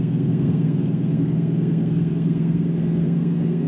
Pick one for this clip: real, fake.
fake